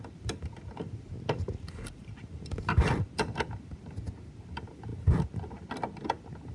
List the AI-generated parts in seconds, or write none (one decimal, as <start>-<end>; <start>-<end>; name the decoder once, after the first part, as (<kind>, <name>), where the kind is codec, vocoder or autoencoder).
none